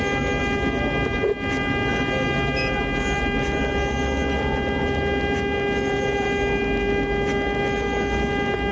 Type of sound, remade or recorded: recorded